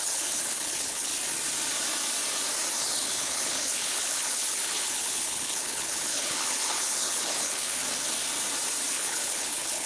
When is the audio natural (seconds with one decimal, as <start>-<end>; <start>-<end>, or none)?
1.1-2.8; 7.8-8.9